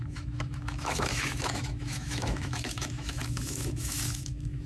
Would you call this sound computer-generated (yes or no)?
yes